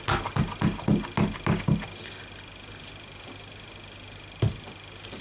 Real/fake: real